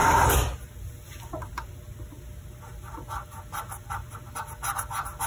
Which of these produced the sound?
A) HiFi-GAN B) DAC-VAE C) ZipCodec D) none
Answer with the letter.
D